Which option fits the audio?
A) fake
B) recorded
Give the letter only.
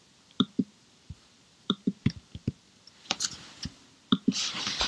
A